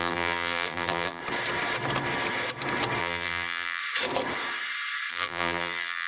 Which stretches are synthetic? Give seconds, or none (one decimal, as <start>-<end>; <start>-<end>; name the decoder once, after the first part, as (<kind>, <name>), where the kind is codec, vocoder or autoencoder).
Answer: 0.0-1.2 (vocoder, BigVGAN v2); 3.0-3.8; 5.1-6.1

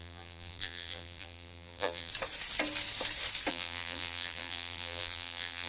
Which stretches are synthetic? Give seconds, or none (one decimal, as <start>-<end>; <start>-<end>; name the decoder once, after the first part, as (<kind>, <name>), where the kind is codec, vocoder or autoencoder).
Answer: 0.0-2.1 (vocoder, BigVGAN v2); 3.5-5.7

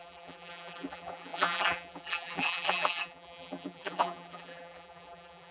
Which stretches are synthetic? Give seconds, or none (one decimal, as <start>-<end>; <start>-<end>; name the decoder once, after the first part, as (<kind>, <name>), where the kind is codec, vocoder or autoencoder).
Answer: 0.0-5.5 (vocoder, BigVGAN v2)

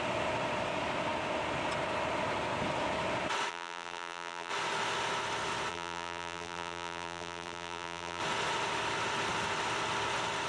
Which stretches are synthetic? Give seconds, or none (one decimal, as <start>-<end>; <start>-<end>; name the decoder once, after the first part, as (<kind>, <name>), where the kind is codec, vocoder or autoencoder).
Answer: 3.5-4.5 (vocoder, BigVGAN v2); 5.7-8.2